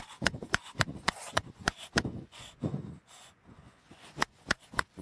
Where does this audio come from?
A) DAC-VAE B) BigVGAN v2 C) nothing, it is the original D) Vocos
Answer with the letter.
D